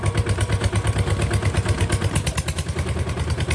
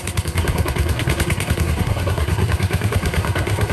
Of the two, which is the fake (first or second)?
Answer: second